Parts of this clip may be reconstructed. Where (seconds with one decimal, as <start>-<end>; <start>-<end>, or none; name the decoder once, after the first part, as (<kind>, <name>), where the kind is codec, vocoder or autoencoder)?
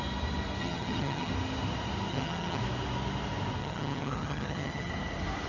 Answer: 0.6-1.3 (vocoder, HiFi-GAN); 2.1-2.6; 3.6-4.9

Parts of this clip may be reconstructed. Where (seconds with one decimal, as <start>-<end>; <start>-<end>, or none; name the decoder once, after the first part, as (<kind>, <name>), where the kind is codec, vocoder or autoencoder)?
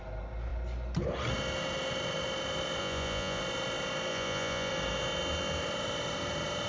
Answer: 2.8-3.4 (vocoder, Vocos); 4.1-4.7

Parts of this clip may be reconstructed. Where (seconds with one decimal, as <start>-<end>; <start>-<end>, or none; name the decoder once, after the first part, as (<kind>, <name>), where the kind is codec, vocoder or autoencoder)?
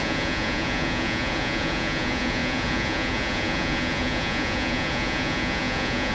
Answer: 0.0-6.1 (vocoder, Vocos)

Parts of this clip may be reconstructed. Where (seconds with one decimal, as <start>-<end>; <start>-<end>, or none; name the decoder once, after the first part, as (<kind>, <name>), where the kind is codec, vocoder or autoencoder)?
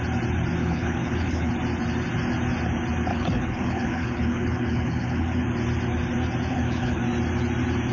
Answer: 0.6-1.5 (codec, HILCodec); 3.1-5.4; 6.5-7.0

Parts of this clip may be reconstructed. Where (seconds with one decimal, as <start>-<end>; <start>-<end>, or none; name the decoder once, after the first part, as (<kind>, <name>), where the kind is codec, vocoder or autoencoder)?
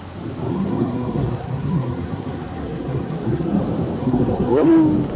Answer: 0.5-3.6 (codec, SNAC); 4.0-4.7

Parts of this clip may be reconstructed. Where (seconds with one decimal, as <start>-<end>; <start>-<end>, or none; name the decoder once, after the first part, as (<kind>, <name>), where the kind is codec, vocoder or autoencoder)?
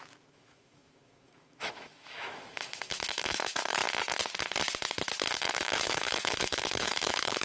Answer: 0.0-3.8 (autoencoder, DAC-VAE); 5.5-7.4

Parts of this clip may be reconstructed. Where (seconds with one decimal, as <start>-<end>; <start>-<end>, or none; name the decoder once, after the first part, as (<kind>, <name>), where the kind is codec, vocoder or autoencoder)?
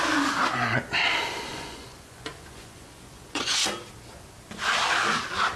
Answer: 1.5-3.7 (vocoder, Vocos)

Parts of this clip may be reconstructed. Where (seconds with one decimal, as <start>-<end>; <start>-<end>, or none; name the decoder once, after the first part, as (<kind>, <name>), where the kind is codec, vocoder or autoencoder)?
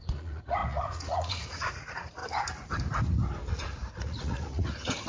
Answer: 0.0-2.2 (vocoder, Vocos); 3.5-5.1